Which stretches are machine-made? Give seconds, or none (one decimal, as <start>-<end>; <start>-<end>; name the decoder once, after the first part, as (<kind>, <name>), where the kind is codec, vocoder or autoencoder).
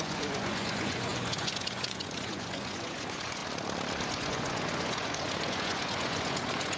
0.0-3.4 (vocoder, Vocos); 4.1-6.8